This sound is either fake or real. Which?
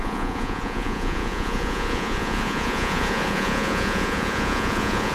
fake